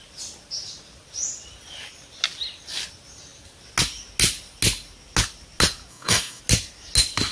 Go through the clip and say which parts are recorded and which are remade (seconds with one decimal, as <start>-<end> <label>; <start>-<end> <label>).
0.0-5.9 recorded; 5.9-6.4 remade; 6.4-7.3 recorded